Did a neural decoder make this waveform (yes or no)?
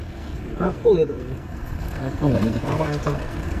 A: yes